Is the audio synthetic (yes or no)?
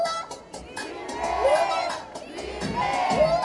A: no